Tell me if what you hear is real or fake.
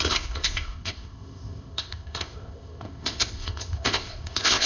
fake